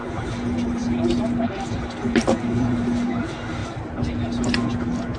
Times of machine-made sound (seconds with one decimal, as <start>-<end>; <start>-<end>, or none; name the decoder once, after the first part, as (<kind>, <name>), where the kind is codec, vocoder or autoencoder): 0.0-3.1 (vocoder, BigVGAN v2); 3.6-4.5